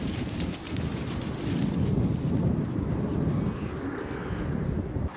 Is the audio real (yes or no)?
no